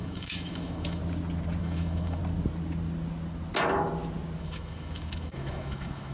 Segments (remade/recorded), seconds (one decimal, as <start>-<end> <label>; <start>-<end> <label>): 0.0-1.0 remade; 1.0-1.6 recorded; 1.6-2.2 remade; 2.2-4.4 recorded; 4.4-6.1 remade